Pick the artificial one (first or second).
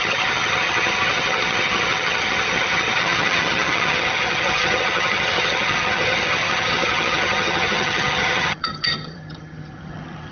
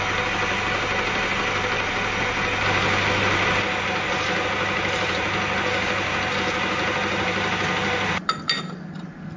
first